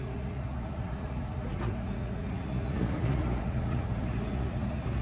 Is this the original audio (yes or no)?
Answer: no